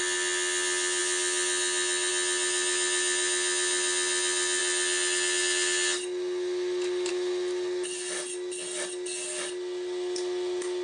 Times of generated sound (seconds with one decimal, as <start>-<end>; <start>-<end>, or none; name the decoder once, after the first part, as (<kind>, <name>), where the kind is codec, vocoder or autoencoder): none